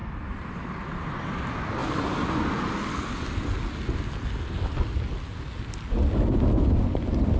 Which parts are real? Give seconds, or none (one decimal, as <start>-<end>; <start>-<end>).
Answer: 1.4-7.4

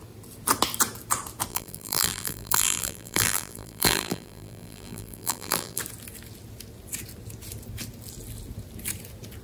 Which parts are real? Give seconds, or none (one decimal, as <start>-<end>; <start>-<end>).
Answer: 0.0-1.5; 5.8-9.4